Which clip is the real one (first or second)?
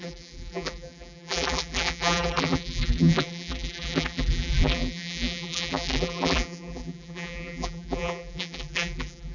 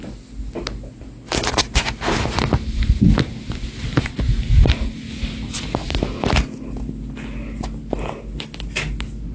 second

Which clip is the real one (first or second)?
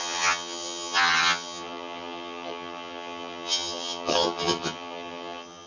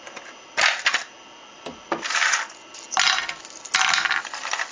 second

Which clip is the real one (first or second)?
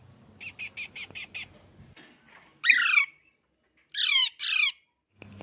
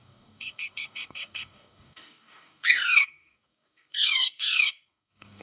first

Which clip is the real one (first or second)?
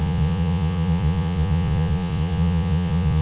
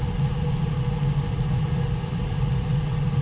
second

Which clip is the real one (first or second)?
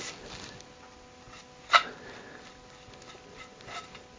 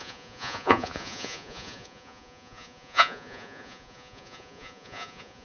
first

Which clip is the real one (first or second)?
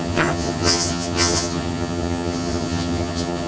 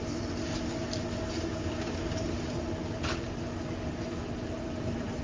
second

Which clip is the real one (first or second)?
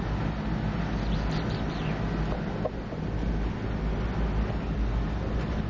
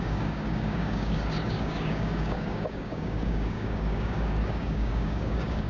first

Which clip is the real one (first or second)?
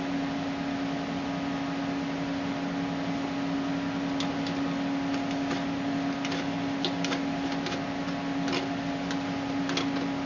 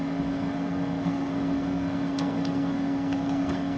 first